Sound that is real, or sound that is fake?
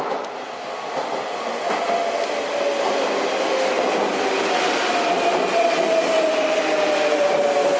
real